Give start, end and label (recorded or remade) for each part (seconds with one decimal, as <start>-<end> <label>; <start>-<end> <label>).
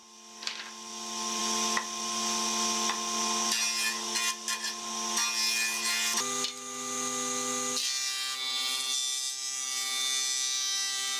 0.0-11.2 recorded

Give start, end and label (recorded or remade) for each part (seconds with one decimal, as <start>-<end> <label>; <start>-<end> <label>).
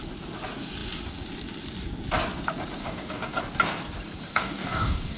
0.0-2.8 recorded; 2.8-3.4 remade; 3.4-4.3 recorded; 4.3-5.2 remade